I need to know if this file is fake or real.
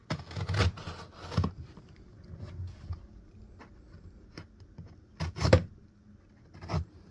real